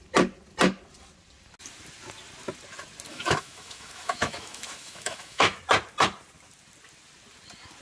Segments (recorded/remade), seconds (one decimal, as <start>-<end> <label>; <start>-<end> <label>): 0.0-3.1 recorded; 3.1-5.6 remade; 5.6-7.8 recorded